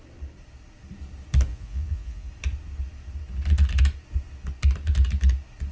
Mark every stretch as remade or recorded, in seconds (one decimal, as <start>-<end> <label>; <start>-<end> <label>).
0.0-1.5 recorded; 1.5-2.3 remade; 2.3-5.7 recorded